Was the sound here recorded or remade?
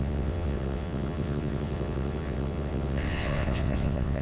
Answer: remade